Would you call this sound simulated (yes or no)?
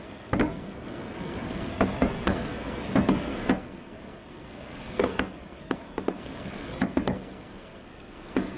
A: yes